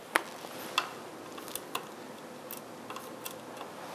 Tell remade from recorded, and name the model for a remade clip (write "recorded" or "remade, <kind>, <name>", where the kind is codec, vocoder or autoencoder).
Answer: recorded